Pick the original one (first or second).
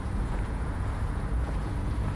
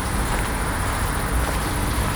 second